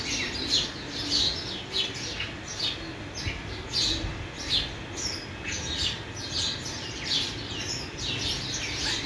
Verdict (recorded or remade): recorded